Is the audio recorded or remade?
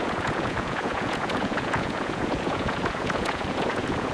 remade